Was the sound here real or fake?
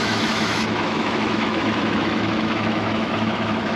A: fake